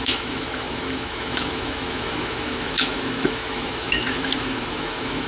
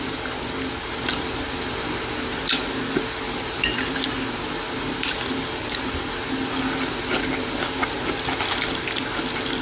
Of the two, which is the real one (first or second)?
second